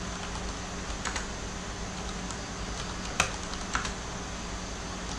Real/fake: real